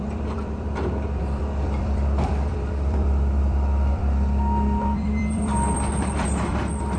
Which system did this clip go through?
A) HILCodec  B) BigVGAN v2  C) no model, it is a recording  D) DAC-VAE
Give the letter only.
B